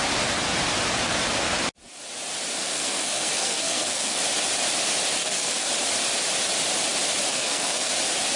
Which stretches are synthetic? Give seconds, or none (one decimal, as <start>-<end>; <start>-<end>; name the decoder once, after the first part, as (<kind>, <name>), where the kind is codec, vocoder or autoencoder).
2.6-4.2 (codec, SNAC); 5.2-5.7; 7.3-7.9